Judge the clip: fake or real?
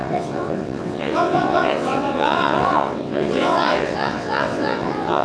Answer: fake